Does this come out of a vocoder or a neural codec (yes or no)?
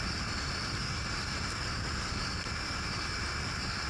no